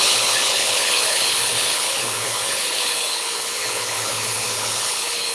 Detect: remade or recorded remade